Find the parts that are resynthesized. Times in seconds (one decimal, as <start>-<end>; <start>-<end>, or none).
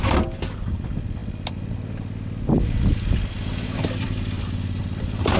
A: none